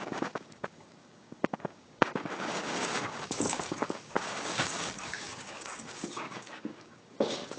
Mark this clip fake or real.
fake